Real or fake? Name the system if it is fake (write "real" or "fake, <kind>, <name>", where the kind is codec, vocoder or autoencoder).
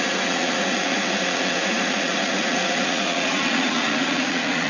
fake, vocoder, Vocos